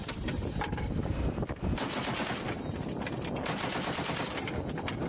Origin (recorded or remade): recorded